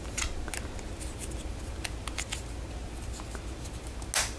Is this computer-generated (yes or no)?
no